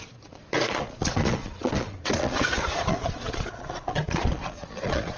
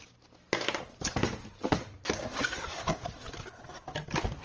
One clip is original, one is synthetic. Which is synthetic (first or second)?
first